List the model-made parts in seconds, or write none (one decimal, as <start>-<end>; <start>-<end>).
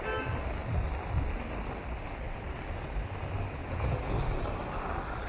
3.6-4.1